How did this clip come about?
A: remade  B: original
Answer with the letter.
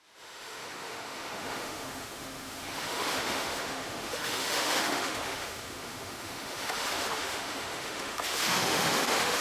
A